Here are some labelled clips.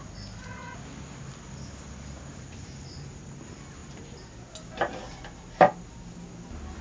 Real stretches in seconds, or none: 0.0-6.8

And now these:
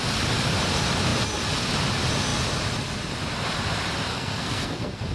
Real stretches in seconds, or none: 0.0-4.1

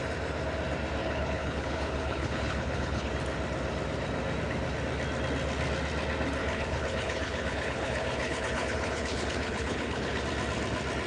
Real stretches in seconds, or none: 0.0-1.0; 3.1-6.4; 10.2-11.1

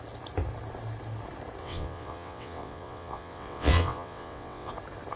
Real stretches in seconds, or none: 0.0-1.6; 4.7-5.2

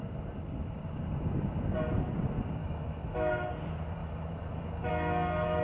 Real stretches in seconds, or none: 0.0-2.6; 3.5-4.0; 4.9-5.6

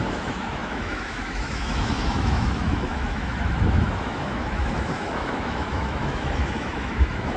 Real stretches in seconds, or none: none

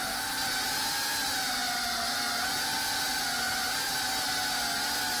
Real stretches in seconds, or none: 0.0-5.2